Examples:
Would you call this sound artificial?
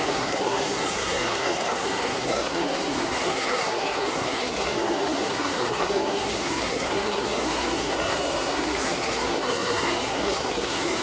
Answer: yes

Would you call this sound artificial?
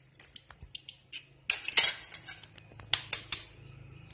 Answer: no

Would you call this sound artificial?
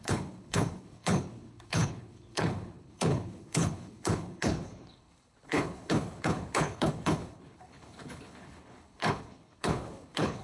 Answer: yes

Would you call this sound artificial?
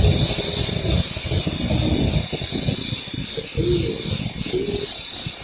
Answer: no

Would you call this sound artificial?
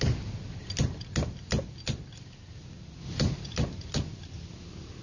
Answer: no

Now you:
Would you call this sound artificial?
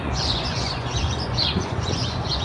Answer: yes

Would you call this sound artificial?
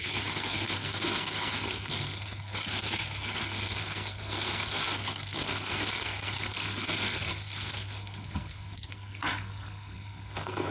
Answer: yes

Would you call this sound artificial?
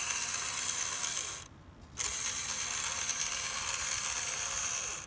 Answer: no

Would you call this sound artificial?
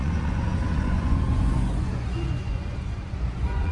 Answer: yes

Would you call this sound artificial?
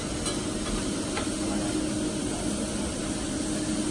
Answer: no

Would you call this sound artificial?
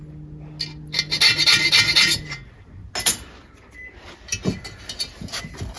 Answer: no